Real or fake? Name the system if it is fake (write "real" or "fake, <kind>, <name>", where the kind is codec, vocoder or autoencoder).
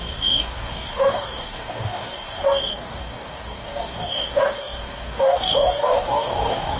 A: fake, codec, DAC